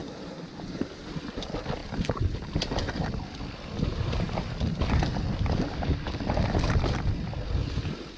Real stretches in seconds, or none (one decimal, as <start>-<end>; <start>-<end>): 0.5-1.8; 2.4-8.2